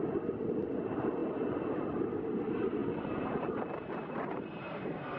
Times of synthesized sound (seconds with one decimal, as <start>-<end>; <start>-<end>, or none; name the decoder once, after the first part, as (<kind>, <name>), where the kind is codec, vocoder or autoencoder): none